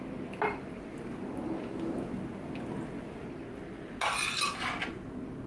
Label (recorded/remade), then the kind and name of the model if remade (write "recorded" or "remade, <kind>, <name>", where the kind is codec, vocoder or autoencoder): recorded